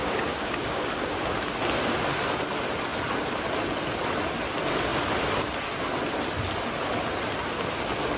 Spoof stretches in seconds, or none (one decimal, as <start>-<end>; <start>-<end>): 0.0-1.3